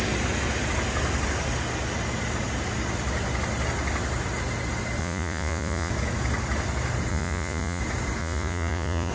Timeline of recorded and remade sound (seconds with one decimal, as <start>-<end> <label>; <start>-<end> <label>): 0.0-5.0 recorded; 5.0-5.9 remade; 5.9-7.1 recorded; 7.1-7.8 remade; 7.8-8.2 recorded; 8.2-9.1 remade